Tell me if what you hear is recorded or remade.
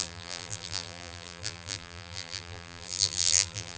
remade